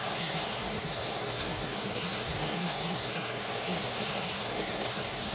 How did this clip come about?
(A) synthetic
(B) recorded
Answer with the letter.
A